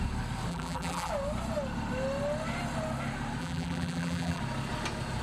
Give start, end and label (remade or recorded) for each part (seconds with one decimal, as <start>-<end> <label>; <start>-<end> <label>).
0.0-0.5 recorded; 0.5-1.1 remade; 1.1-3.4 recorded; 3.4-4.4 remade; 4.4-5.2 recorded